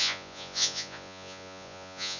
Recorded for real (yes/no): no